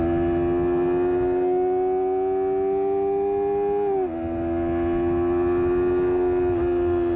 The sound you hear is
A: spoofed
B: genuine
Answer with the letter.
B